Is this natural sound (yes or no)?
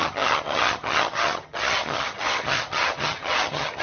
no